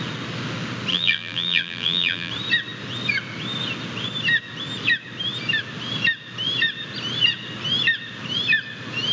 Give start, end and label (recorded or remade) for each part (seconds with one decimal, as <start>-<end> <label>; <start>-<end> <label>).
0.0-0.9 recorded; 0.9-2.3 remade; 2.3-9.1 recorded